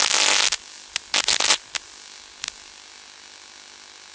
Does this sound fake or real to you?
real